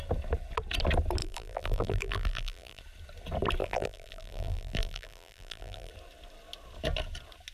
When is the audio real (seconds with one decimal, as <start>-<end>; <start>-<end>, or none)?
0.0-1.2; 2.8-3.6; 5.9-7.5